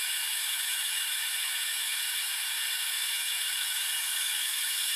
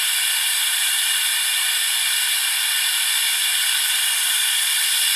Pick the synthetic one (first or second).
first